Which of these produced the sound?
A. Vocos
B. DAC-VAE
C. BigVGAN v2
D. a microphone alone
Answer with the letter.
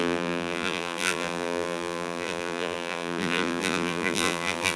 C